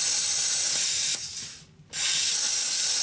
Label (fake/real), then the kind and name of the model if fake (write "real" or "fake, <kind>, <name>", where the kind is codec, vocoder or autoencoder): real